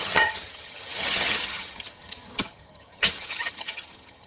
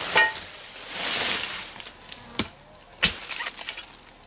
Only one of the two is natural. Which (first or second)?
second